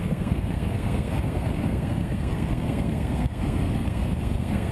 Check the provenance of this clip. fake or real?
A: fake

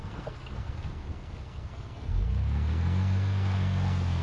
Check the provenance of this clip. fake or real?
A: fake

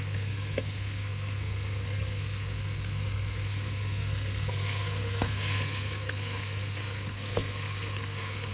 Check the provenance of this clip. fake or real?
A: fake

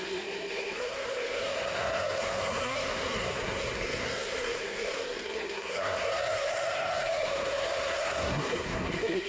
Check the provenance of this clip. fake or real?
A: fake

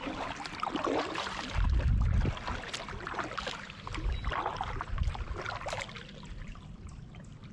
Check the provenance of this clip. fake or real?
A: real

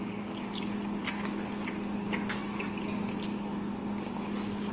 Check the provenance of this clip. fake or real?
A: real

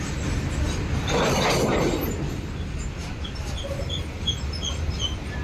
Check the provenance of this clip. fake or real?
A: real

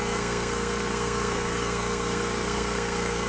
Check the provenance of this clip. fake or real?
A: fake